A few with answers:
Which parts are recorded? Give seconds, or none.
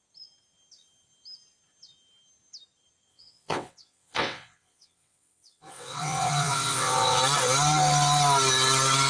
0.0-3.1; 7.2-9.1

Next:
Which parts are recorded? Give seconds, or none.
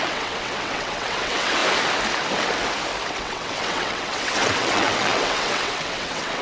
1.6-3.1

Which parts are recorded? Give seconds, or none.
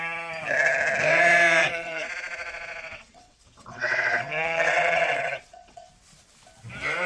0.0-1.6; 5.9-7.1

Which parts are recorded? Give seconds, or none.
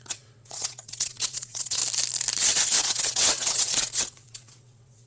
1.8-2.4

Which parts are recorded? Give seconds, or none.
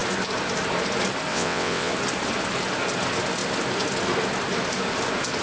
0.0-1.3; 1.9-5.4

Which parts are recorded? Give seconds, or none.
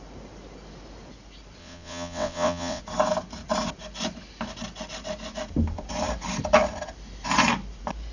0.0-1.6; 2.8-8.1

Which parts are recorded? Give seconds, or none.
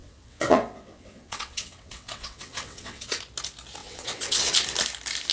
3.2-3.8; 4.5-5.3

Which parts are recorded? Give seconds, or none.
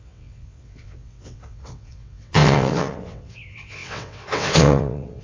none